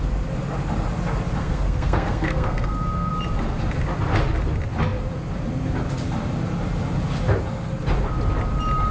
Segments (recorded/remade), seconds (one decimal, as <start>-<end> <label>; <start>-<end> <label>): 0.0-1.4 recorded; 1.4-3.1 remade; 3.1-8.9 recorded